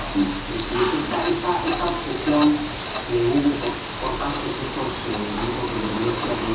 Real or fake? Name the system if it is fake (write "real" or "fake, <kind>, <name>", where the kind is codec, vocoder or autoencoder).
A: real